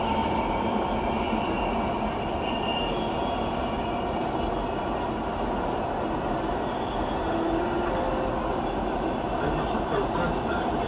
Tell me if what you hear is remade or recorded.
recorded